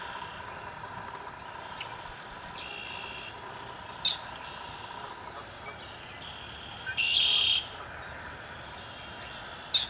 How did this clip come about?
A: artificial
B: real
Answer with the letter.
B